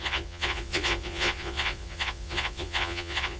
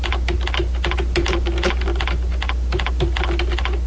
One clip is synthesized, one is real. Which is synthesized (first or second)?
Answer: first